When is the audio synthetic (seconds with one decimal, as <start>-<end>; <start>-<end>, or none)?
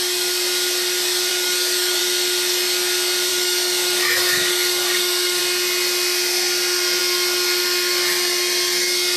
1.3-2.0; 3.3-5.4